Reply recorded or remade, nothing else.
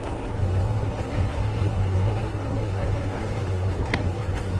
remade